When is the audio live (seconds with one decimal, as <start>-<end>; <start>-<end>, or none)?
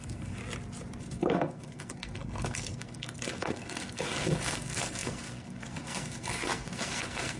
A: 0.4-1.0